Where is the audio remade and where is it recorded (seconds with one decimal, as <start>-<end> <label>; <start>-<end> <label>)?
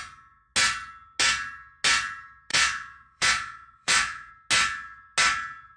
0.0-2.5 recorded; 2.5-4.3 remade; 4.3-5.8 recorded